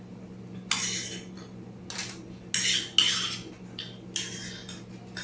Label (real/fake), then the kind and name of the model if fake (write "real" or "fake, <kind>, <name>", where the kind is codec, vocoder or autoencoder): real